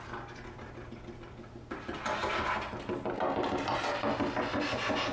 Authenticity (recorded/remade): recorded